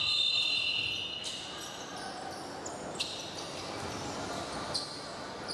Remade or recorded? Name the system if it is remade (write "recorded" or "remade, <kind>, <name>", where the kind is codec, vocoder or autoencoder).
recorded